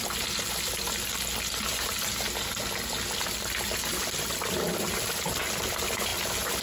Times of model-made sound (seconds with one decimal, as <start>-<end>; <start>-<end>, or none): none